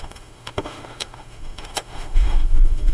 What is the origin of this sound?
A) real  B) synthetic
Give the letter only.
B